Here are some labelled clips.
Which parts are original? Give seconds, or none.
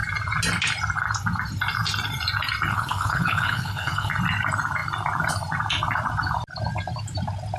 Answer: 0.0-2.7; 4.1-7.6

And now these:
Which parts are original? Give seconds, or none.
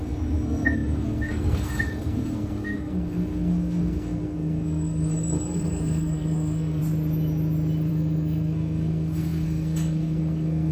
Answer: 6.8-7.9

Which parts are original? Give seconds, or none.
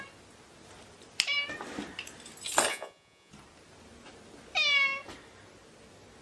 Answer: 0.0-2.7; 3.3-6.2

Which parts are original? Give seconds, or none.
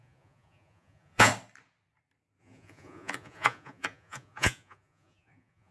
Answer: 1.3-2.4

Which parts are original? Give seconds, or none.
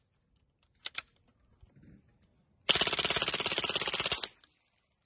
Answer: 0.0-5.1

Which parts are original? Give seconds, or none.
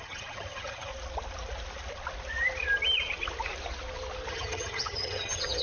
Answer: 0.9-4.3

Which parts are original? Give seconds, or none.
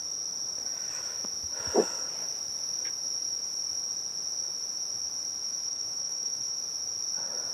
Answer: 0.0-5.4; 6.6-7.5